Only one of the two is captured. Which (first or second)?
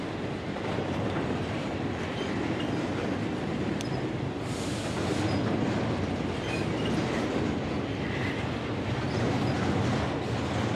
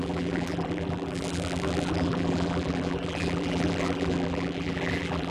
first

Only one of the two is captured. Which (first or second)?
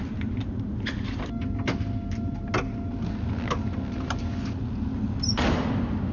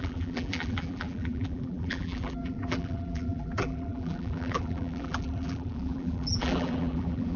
first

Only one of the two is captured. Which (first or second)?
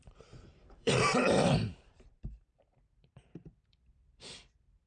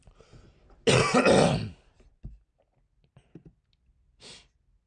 second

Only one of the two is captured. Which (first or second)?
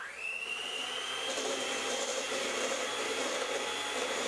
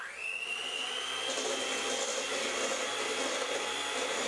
second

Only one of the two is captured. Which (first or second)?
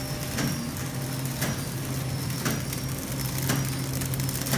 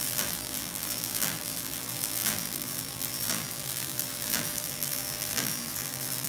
first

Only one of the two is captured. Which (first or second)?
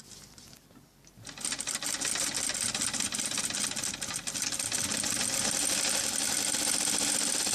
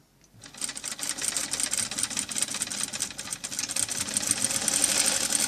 second